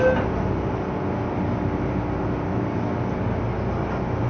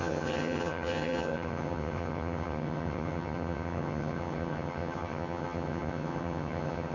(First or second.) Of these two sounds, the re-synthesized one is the second